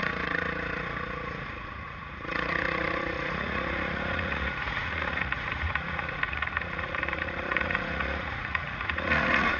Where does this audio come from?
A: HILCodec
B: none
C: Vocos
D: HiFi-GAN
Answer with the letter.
C